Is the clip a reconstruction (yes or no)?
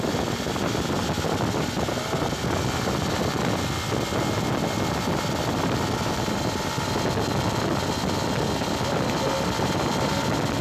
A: no